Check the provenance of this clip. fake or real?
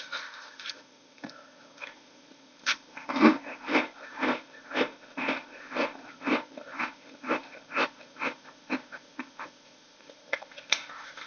fake